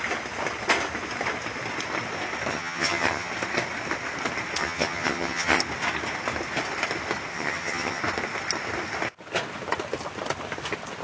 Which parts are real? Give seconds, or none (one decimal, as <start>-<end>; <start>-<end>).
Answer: 0.0-2.5; 3.3-4.6; 5.6-7.3; 8.0-11.0